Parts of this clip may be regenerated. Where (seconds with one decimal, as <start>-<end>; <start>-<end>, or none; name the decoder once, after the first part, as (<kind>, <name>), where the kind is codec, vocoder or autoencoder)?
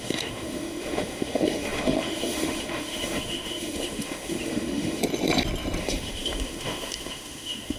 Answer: 0.0-5.0 (autoencoder, DAC-VAE); 5.8-7.8